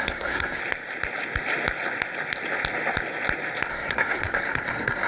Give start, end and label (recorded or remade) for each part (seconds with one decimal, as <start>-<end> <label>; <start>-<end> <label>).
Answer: 0.0-0.6 remade; 0.6-3.7 recorded; 3.7-5.1 remade